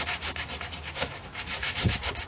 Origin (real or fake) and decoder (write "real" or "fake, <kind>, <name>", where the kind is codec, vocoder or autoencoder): real